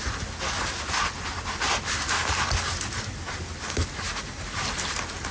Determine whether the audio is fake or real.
real